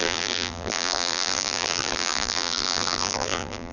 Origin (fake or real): fake